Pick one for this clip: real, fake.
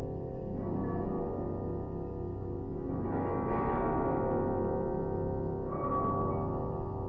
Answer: real